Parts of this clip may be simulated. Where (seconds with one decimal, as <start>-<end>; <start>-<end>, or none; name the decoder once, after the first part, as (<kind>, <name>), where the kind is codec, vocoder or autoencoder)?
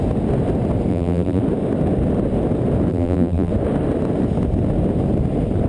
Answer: 0.9-1.4 (vocoder, BigVGAN v2); 2.9-3.5